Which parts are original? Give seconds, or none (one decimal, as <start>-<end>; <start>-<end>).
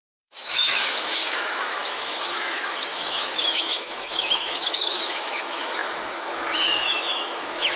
none